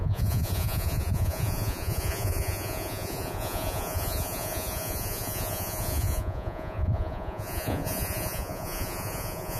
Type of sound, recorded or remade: remade